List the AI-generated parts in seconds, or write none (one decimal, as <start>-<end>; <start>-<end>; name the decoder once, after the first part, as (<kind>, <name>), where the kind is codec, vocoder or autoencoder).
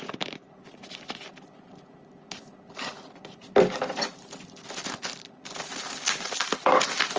none